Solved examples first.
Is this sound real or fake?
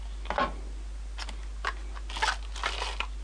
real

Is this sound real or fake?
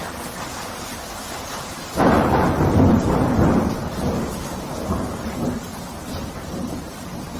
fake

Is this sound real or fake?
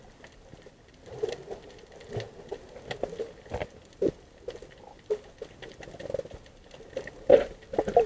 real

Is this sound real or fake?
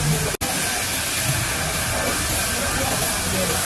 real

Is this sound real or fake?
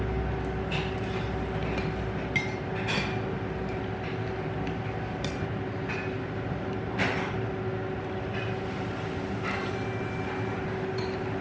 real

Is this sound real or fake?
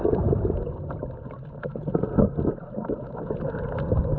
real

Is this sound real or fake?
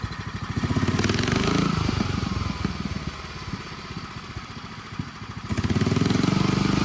real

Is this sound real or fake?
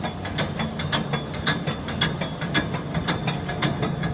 real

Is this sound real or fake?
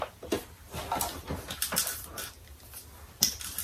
real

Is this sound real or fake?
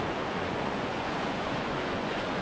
fake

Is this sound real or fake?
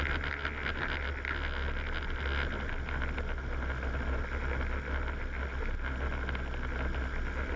real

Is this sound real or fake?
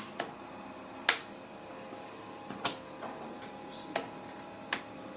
real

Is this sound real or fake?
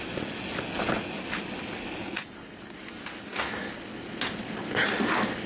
real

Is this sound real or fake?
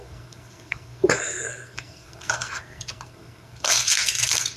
fake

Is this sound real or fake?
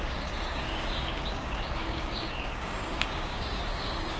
fake